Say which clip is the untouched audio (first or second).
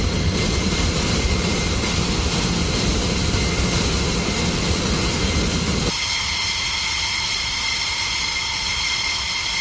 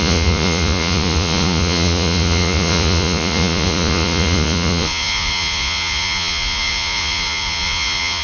first